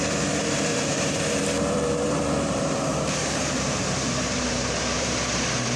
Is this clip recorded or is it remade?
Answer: remade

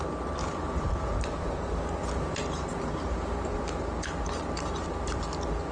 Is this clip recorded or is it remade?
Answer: remade